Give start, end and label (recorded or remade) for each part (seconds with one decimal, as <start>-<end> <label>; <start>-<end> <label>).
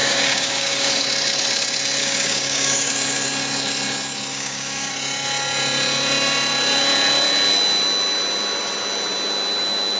0.0-1.0 remade; 1.0-2.0 recorded; 2.0-2.9 remade; 2.9-4.3 recorded; 4.3-4.9 remade; 4.9-10.0 recorded